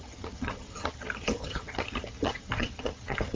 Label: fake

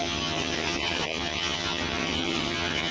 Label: fake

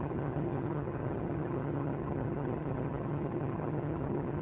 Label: fake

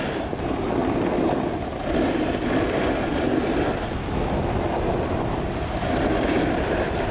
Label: real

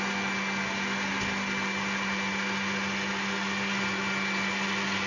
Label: real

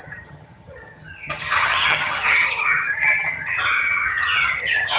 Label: fake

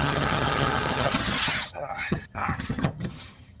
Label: fake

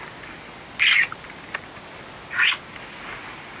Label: real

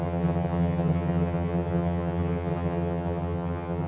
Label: fake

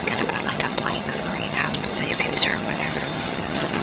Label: fake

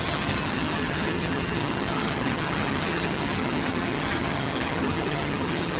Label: fake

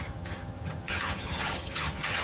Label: fake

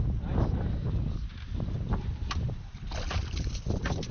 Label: real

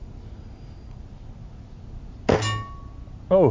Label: real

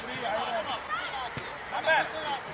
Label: real